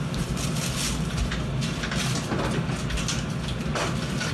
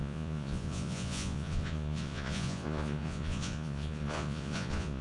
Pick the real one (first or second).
first